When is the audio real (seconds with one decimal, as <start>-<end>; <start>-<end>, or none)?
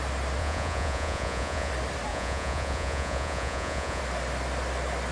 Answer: 0.0-0.4; 1.7-2.1; 4.0-5.1